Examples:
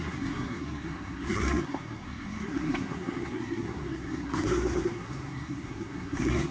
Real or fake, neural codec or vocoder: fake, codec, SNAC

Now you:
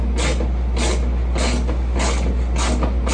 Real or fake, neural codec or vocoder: real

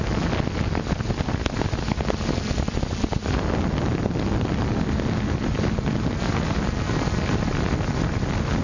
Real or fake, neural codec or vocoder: real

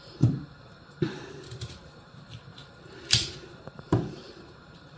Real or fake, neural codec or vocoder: fake, vocoder, BigVGAN v2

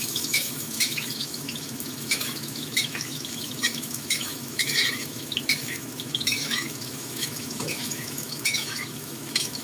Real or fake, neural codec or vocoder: fake, autoencoder, DAC-VAE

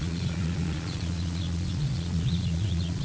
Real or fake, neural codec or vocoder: fake, vocoder, Vocos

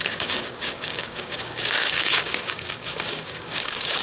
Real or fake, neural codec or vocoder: fake, codec, DAC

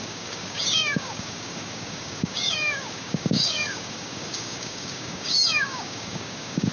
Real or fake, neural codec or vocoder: fake, codec, DAC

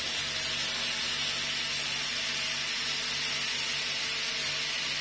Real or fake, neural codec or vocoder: real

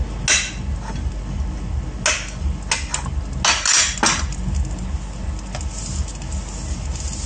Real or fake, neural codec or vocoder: real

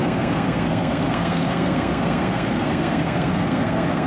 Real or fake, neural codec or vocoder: fake, codec, SNAC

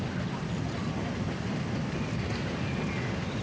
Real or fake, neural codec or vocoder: real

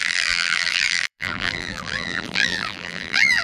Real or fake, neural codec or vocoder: fake, vocoder, BigVGAN v2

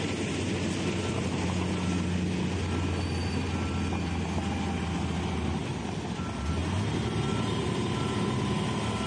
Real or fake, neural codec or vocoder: real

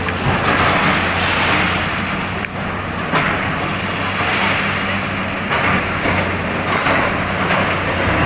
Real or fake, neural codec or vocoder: real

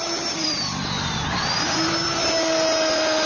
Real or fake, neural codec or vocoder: real